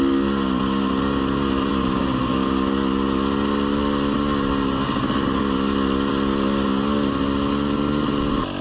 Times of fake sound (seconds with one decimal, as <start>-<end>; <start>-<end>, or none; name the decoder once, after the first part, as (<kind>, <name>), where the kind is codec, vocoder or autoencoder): none

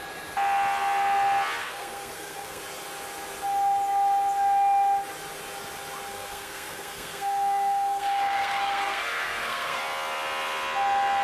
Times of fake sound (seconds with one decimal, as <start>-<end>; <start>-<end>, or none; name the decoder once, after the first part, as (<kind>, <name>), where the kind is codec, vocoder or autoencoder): 1.6-2.6 (codec, SNAC); 6.1-9.8

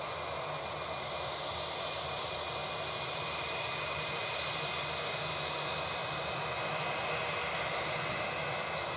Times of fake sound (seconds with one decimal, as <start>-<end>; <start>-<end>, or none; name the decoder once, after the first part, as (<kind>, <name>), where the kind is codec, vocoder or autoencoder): none

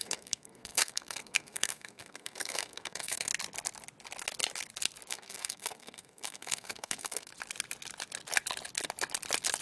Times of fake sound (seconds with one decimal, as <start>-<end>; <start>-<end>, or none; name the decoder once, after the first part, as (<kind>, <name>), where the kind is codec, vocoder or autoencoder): 0.0-3.3 (codec, SNAC); 5.1-7.3

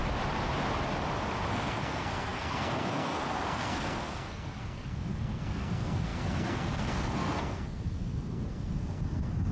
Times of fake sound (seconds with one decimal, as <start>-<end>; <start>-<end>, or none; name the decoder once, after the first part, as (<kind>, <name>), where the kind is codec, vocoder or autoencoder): 1.5-9.5 (codec, SNAC)

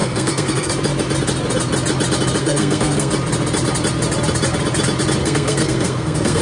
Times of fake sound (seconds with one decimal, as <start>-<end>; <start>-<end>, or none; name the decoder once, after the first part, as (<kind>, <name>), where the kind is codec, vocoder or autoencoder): 0.0-0.7 (codec, SNAC); 2.4-3.1; 5.2-6.4